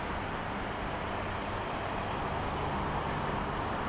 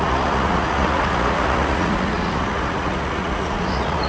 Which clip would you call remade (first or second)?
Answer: second